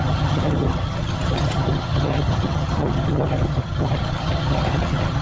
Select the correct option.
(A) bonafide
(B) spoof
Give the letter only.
B